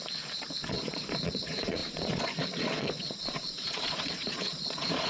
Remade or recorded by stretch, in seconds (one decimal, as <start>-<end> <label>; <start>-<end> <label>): 0.0-0.7 recorded; 0.7-5.1 remade